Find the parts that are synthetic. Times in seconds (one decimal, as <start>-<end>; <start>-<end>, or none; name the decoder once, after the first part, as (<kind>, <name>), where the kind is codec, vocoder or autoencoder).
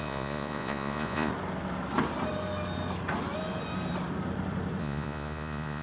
0.0-1.3 (vocoder, Vocos); 4.8-5.8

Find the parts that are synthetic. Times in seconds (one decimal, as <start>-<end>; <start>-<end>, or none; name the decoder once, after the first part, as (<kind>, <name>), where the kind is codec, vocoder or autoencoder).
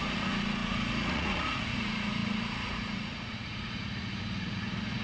0.0-5.0 (vocoder, Vocos)